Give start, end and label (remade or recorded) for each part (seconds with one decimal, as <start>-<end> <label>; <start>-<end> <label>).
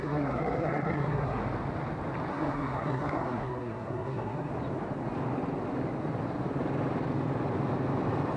0.0-1.4 remade; 1.4-2.3 recorded; 2.3-4.5 remade; 4.5-8.4 recorded